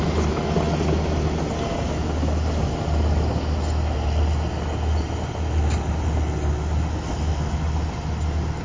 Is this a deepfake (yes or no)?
no